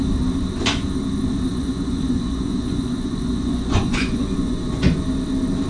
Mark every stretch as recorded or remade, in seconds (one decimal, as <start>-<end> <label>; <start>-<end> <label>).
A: 0.0-1.5 recorded; 1.5-4.9 remade; 4.9-5.7 recorded